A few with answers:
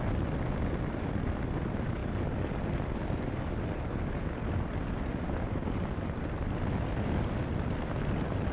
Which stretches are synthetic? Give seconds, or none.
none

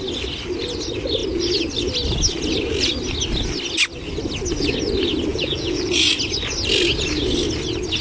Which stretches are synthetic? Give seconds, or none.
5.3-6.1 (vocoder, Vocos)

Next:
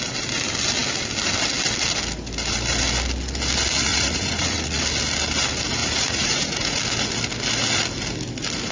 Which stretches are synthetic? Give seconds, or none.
3.9-4.8 (vocoder, Vocos); 5.8-6.8